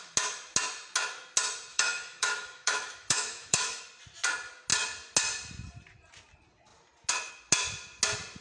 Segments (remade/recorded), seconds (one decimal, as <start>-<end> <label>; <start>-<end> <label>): 0.0-1.7 recorded; 1.7-3.8 remade; 3.8-8.4 recorded

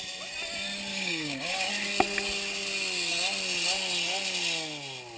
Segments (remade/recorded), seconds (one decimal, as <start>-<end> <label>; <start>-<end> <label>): 0.0-0.9 recorded; 0.9-1.7 remade; 1.7-5.2 recorded

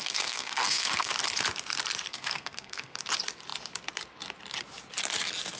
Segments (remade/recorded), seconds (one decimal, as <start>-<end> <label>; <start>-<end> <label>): 0.0-1.1 remade; 1.1-2.1 recorded; 2.1-3.0 remade; 3.0-5.6 recorded

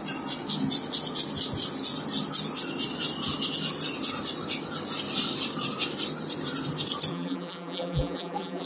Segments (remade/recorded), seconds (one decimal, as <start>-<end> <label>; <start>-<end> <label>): 0.0-7.1 recorded; 7.1-8.7 remade

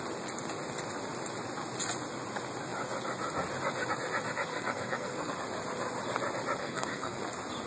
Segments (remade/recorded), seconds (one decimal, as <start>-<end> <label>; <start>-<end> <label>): 0.0-4.5 recorded; 4.5-5.3 remade; 5.3-6.6 recorded; 6.6-7.2 remade; 7.2-7.7 recorded

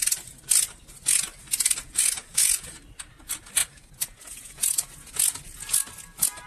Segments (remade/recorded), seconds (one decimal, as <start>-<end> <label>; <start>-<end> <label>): 0.0-1.8 recorded; 1.8-2.7 remade; 2.7-3.6 recorded; 3.6-5.1 remade; 5.1-6.5 recorded